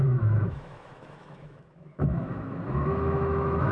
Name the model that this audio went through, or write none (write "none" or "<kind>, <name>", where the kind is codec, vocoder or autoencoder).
autoencoder, DAC-VAE